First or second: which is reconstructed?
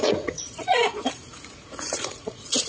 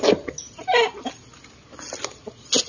first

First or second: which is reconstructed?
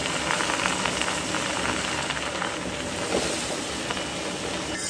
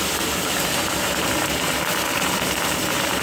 second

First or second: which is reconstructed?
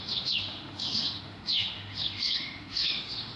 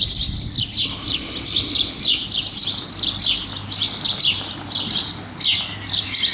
first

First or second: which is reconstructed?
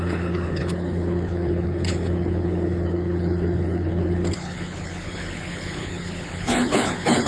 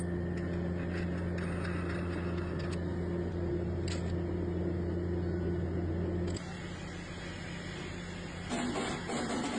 first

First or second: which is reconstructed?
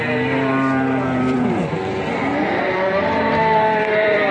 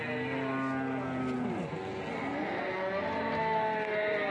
first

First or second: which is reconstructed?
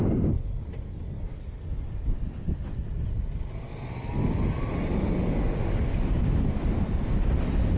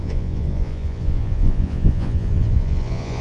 second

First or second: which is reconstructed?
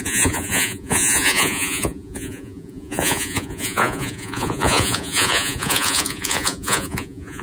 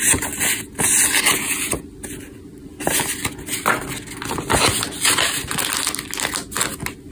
first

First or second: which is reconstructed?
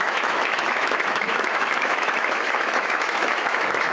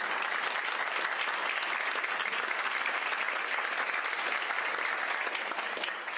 first